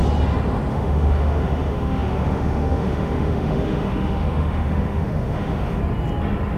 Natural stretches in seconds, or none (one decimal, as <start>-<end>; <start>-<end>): 0.0-0.7; 5.8-6.6